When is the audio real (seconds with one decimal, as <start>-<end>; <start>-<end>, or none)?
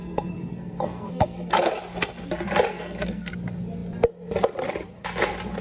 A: 1.7-2.7; 3.3-5.6